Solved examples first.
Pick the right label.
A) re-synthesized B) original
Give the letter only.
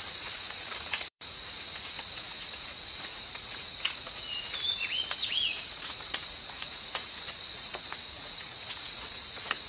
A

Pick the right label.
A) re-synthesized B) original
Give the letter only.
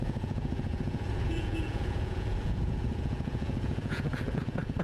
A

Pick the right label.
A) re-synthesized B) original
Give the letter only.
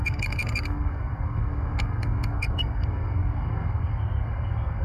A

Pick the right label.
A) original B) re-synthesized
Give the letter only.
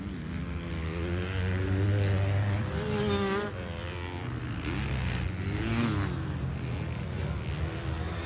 A